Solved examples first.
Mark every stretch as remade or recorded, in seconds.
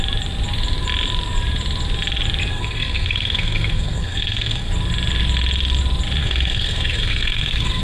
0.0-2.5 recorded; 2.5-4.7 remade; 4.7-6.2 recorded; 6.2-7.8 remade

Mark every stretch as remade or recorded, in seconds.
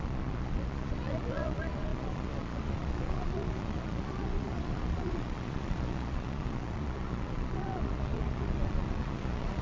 0.0-9.6 remade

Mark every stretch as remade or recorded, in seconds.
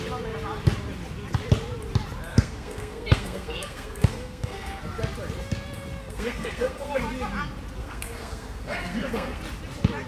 0.0-2.3 recorded; 2.3-4.8 remade; 4.8-6.0 recorded; 6.0-7.0 remade; 7.0-7.8 recorded; 7.8-9.4 remade; 9.4-10.1 recorded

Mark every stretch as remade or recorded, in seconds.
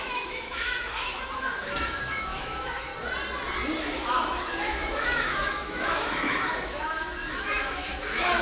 0.0-2.9 remade; 2.9-3.8 recorded; 3.8-8.4 remade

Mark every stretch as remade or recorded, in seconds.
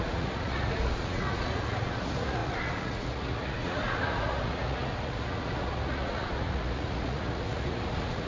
0.0-8.3 remade